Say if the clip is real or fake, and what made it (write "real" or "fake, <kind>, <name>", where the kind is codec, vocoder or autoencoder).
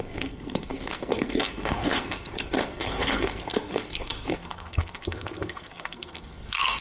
fake, codec, SNAC